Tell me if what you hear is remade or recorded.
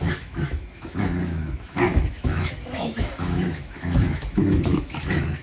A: remade